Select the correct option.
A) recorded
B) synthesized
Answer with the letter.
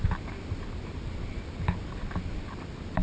A